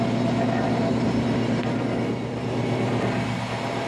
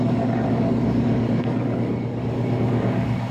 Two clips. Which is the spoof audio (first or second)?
second